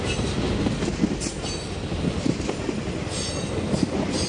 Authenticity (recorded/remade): recorded